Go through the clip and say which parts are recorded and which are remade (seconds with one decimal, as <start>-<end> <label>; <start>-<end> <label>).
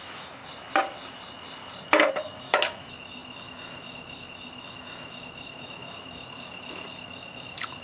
0.0-0.4 remade; 0.4-2.1 recorded; 2.1-7.8 remade